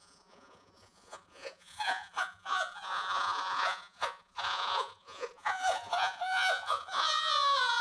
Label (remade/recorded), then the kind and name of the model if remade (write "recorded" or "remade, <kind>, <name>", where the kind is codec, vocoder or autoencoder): remade, vocoder, Vocos